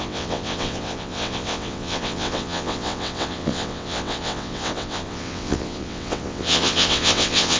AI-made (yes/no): yes